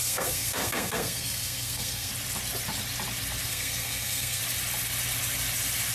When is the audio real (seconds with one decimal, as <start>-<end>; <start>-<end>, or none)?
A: 2.1-3.5; 4.4-5.9